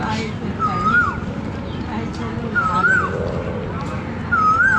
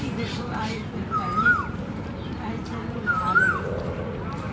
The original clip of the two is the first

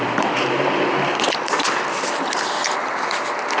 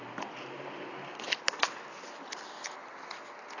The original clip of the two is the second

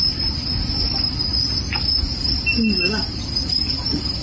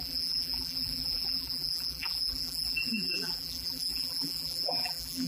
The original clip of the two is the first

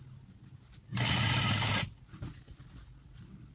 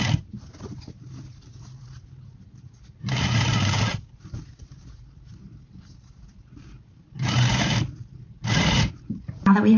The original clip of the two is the first